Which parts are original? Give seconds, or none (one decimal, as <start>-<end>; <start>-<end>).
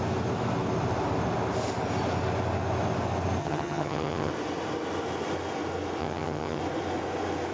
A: 0.0-3.4; 4.3-6.0; 6.6-7.5